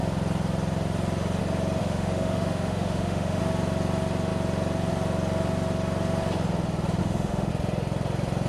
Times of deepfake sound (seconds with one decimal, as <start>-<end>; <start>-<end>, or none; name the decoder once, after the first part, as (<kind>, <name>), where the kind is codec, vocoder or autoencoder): 1.8-3.4 (autoencoder, DAC-VAE); 7.0-7.5